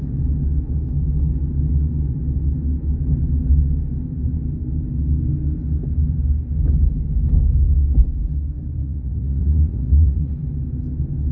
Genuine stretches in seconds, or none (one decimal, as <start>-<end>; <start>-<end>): 0.0-8.8; 10.3-11.3